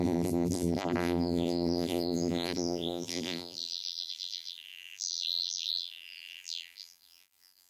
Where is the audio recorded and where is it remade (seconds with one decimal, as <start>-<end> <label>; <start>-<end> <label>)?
0.0-7.7 remade